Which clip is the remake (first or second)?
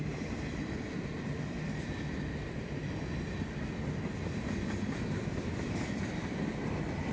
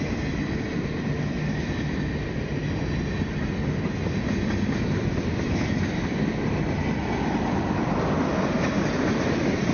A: first